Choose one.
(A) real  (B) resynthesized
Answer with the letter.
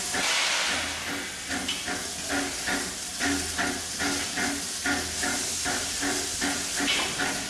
A